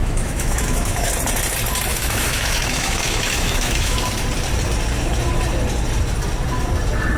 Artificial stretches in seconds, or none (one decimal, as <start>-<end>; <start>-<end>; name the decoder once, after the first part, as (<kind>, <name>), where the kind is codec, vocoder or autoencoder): 0.0-1.1 (autoencoder, DAC-VAE); 1.9-4.2